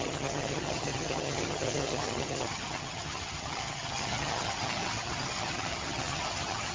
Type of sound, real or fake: fake